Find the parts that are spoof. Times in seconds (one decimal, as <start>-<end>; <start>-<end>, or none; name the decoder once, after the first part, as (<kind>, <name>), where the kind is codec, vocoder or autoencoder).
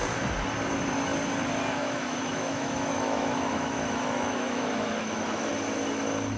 1.7-5.5 (autoencoder, DAC-VAE)